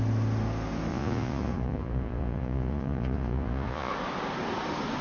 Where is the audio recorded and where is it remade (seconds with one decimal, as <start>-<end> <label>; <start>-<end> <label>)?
0.0-0.9 recorded; 0.9-3.9 remade; 3.9-5.0 recorded

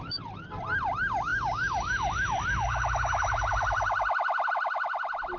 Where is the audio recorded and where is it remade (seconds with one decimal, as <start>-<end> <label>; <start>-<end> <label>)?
0.0-5.4 recorded

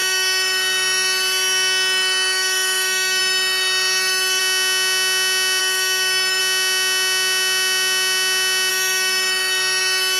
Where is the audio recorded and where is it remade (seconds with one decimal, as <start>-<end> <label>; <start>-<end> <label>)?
0.0-4.4 remade; 4.4-5.6 recorded; 5.6-6.4 remade; 6.4-8.7 recorded; 8.7-10.2 remade

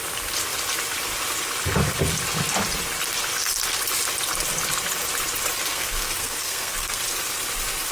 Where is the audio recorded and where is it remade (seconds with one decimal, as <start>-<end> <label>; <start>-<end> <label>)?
0.0-5.7 recorded; 5.7-7.0 remade; 7.0-7.9 recorded